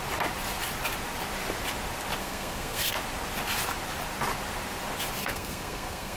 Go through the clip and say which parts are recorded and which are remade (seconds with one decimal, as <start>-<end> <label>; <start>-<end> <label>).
0.0-2.2 recorded; 2.2-2.9 remade; 2.9-5.2 recorded; 5.2-6.2 remade